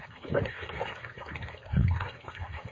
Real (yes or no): no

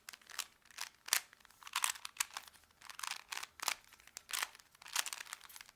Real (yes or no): yes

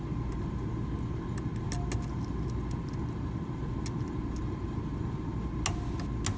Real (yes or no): yes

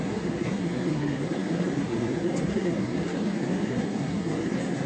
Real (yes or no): no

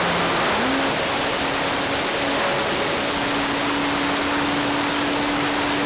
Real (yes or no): yes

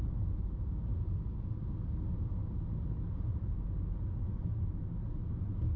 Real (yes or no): yes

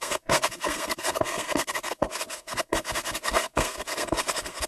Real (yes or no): no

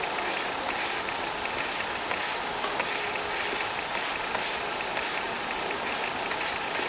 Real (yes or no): yes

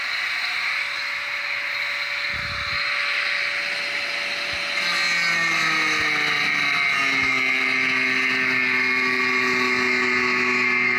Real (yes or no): yes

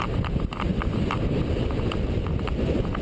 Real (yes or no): yes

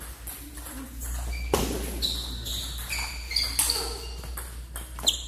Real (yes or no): yes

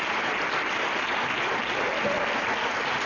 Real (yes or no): yes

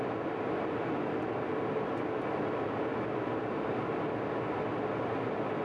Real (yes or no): yes